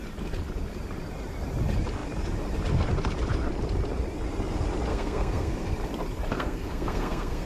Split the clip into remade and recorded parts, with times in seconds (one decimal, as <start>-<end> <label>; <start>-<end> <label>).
0.0-4.9 recorded; 4.9-5.7 remade; 5.7-6.3 recorded; 6.3-7.5 remade